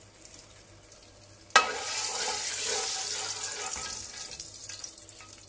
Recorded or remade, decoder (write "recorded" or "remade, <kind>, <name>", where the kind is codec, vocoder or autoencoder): recorded